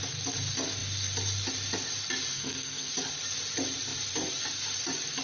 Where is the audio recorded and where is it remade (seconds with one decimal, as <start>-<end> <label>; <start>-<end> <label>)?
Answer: 0.0-2.3 recorded; 2.3-2.9 remade; 2.9-5.2 recorded